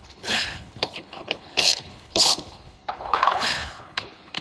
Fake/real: fake